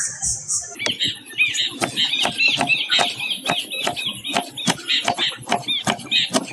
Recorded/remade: recorded